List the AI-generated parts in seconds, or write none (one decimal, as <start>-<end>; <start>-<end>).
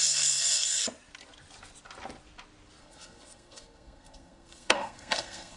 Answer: 0.0-0.8; 2.8-5.6